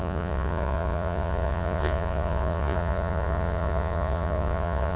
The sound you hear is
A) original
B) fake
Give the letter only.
B